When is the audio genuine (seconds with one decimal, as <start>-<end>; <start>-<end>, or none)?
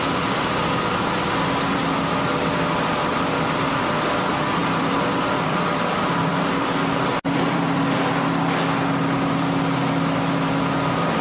0.0-4.6; 7.8-11.2